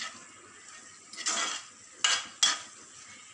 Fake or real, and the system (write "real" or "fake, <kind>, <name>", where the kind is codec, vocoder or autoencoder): real